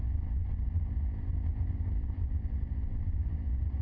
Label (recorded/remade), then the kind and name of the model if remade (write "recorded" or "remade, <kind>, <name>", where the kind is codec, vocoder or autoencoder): recorded